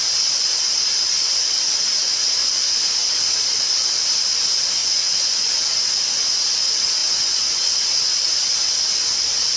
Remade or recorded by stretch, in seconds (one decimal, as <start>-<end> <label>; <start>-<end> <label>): 0.0-4.8 recorded; 4.8-5.5 remade; 5.5-7.0 recorded; 7.0-7.7 remade; 7.7-9.6 recorded